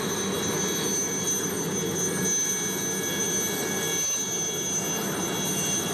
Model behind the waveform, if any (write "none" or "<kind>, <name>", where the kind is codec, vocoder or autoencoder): none